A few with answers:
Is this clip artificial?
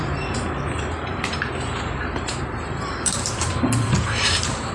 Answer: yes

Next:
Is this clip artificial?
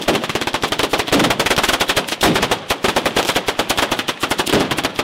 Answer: no